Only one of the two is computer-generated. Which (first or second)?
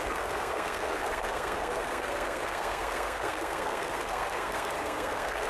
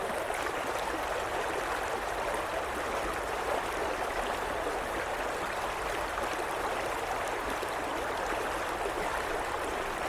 first